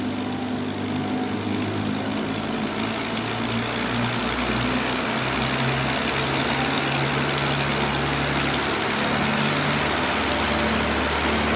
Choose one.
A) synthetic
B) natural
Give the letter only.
B